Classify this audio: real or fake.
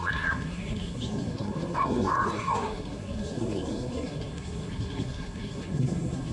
fake